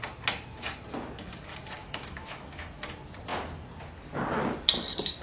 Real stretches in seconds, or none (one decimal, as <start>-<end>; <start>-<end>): 0.0-1.8; 2.7-5.2